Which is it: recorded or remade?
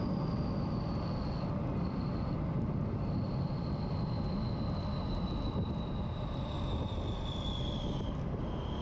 recorded